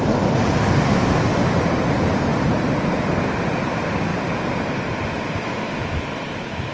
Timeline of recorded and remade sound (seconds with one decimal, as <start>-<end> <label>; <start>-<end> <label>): 0.0-2.3 recorded; 2.3-2.9 remade; 2.9-4.1 recorded; 4.1-4.9 remade; 4.9-6.7 recorded